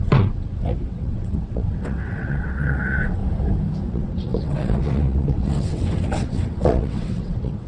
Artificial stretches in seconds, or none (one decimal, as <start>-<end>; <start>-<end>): 0.0-3.2; 3.9-7.7